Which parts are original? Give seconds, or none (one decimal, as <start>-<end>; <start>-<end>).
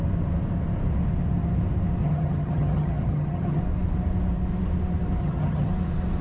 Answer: 0.0-2.0; 3.6-5.2; 5.7-6.2